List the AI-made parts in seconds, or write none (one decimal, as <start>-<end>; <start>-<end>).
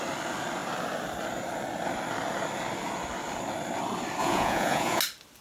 4.2-5.0